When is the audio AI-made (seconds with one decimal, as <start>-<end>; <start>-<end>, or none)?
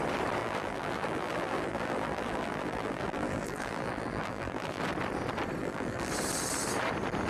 0.4-4.8; 5.6-6.1